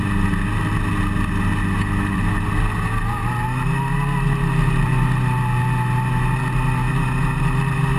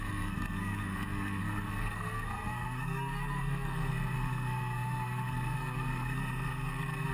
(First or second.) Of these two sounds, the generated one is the second